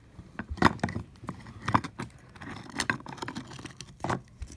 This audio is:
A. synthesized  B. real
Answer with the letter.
B